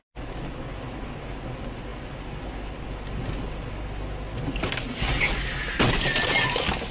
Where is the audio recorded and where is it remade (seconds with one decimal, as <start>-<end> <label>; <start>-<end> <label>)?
0.0-6.9 recorded